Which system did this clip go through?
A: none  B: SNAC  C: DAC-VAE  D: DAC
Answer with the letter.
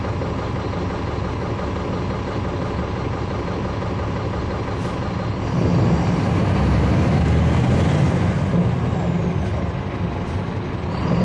A